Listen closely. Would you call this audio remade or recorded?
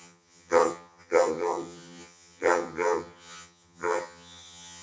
remade